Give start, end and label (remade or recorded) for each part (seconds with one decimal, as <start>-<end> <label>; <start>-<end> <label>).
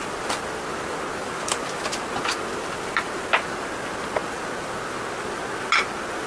0.0-6.3 recorded